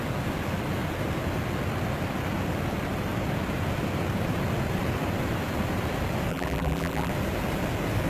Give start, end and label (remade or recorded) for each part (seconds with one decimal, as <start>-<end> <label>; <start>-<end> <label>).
0.0-6.3 recorded; 6.3-7.1 remade; 7.1-8.1 recorded